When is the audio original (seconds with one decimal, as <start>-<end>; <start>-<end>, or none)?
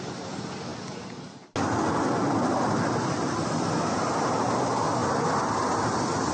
0.0-6.3